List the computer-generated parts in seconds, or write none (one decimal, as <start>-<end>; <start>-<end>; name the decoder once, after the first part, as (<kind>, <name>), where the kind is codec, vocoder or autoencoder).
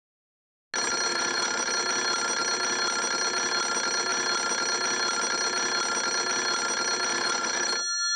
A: 1.1-1.7 (vocoder, Vocos); 7.1-7.7